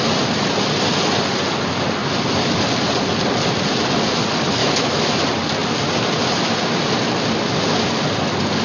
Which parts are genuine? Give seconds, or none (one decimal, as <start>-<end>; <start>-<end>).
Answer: 0.0-4.6; 5.1-8.6